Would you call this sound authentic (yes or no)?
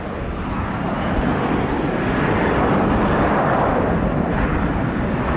yes